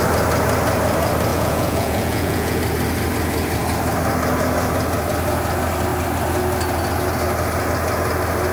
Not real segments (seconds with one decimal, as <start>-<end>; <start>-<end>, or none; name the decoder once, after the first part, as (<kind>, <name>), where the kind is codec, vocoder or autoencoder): 1.3-2.6 (vocoder, Vocos)